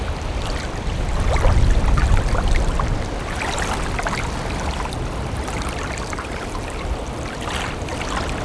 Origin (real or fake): real